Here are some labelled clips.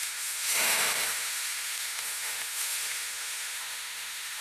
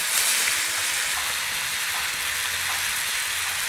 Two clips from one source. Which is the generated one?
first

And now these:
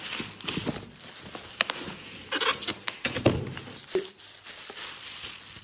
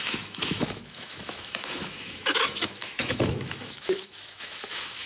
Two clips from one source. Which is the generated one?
second